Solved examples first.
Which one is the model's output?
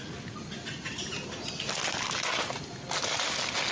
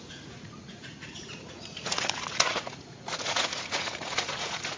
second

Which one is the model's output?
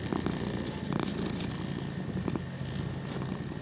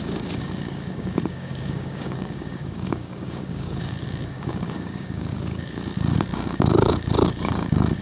second